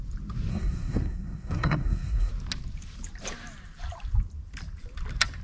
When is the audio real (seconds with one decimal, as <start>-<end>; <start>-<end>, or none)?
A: 0.0-0.5; 2.3-5.4